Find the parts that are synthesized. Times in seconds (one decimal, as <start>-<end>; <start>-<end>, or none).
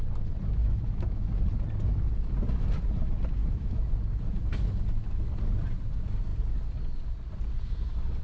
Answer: 0.6-1.3; 3.4-3.9